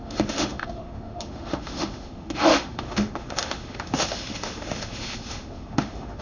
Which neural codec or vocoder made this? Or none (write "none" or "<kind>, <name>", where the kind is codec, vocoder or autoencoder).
autoencoder, DAC-VAE